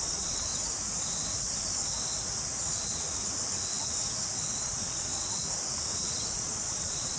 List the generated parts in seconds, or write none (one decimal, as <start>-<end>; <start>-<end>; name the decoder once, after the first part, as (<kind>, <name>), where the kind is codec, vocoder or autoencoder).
0.0-0.5 (vocoder, Vocos); 4.5-5.1; 6.3-7.2